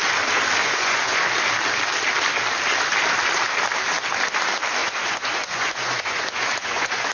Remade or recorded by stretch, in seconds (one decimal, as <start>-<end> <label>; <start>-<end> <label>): 0.0-0.6 recorded; 0.6-1.2 remade; 1.2-4.8 recorded; 4.8-7.1 remade